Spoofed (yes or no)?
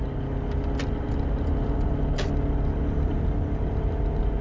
no